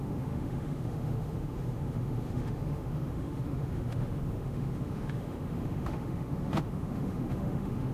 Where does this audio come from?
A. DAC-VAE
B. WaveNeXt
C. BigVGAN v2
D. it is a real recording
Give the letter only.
A